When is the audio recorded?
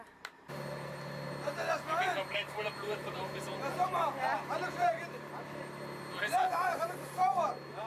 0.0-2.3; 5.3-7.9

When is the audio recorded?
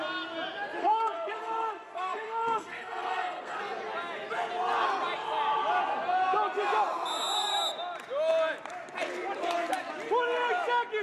0.0-0.8; 3.6-11.0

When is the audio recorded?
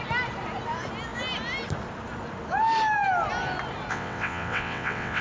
0.0-3.9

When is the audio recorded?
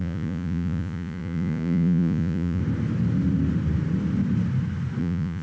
2.6-5.0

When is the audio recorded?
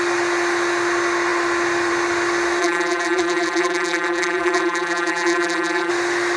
0.0-2.6; 5.9-6.4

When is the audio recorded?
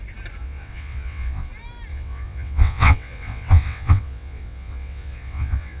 0.0-0.4; 1.5-1.9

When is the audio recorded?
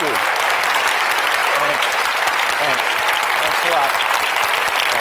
0.0-1.4; 2.4-5.0